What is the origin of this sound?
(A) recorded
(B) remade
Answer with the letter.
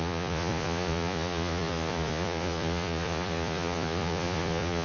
B